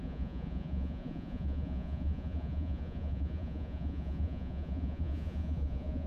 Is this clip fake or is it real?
fake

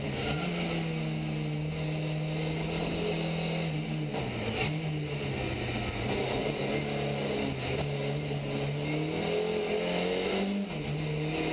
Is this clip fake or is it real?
real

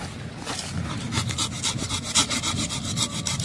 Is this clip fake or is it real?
real